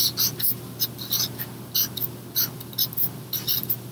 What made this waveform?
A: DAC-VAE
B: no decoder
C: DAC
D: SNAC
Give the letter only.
B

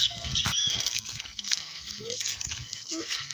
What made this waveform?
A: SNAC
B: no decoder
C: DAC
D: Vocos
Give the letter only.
A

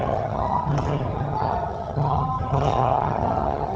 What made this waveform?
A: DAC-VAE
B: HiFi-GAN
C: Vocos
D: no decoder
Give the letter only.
B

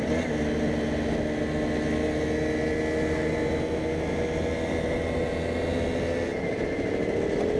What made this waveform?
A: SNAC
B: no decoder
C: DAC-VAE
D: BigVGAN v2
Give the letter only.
B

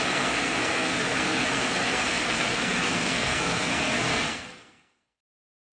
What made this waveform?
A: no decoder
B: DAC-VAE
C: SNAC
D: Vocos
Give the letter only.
C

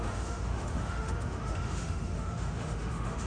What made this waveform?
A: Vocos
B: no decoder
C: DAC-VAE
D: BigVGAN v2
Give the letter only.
C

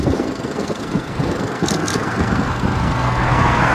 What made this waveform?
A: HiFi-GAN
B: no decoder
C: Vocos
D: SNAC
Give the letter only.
D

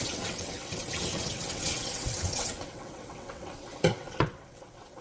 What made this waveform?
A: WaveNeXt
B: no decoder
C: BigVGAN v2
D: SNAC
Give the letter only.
A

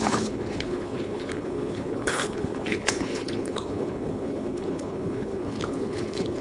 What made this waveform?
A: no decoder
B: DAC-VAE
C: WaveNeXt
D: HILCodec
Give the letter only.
D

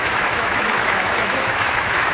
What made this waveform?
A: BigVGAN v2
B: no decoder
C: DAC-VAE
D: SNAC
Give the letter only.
C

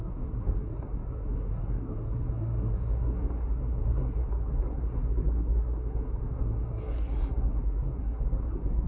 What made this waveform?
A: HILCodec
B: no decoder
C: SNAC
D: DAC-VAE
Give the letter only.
C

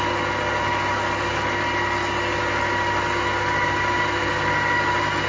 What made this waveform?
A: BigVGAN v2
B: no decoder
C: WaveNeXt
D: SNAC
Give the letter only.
B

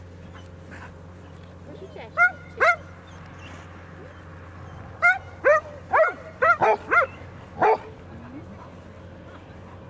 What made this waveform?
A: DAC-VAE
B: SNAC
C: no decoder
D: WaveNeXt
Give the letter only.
C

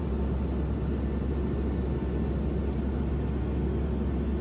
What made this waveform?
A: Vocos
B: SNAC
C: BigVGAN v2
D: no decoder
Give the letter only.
D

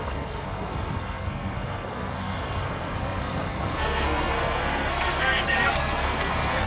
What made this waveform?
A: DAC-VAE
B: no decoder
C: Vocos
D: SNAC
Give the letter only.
D